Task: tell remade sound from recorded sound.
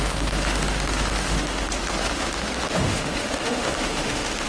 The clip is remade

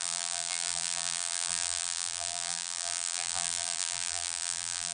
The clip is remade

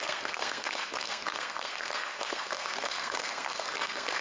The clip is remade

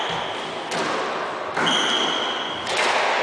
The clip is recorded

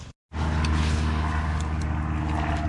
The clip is recorded